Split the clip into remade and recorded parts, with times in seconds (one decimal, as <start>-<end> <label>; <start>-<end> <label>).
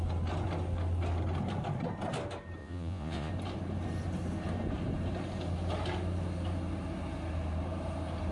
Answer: 0.0-2.6 recorded; 2.6-3.3 remade; 3.3-8.3 recorded